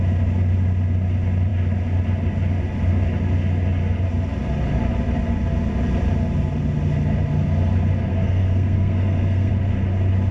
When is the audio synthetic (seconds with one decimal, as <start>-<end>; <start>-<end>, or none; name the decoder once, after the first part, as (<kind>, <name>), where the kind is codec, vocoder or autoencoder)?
8.1-9.5 (codec, SNAC)

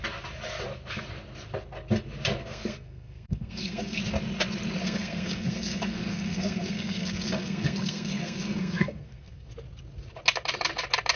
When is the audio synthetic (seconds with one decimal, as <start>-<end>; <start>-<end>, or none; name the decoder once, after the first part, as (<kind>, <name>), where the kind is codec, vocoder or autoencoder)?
2.4-4.0 (codec, SNAC); 4.8-9.5

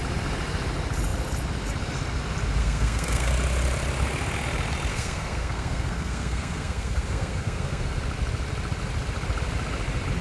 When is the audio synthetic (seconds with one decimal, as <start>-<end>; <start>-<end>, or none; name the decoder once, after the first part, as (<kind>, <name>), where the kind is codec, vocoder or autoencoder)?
2.6-3.3 (codec, SNAC); 4.9-8.0

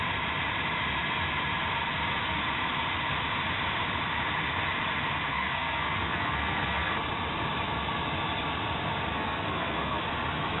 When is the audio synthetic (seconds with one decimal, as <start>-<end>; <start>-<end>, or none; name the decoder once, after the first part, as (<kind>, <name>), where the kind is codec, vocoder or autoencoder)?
5.3-6.9 (codec, SNAC); 9.1-10.0

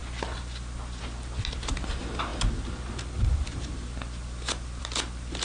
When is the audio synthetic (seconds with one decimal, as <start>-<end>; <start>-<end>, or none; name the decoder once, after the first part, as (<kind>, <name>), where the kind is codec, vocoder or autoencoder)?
none

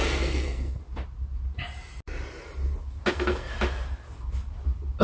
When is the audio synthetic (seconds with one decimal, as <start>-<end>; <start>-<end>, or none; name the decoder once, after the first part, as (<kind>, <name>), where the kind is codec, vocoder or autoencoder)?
0.0-0.8 (codec, SNAC); 3.1-3.5

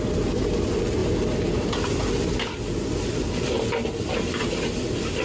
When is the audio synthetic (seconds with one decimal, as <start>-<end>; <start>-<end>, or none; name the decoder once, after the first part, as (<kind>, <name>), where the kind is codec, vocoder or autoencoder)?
none

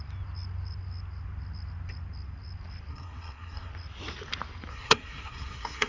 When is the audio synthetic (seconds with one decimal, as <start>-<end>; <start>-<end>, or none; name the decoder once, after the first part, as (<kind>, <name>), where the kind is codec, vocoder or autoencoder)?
2.9-3.7 (codec, SNAC); 4.7-5.9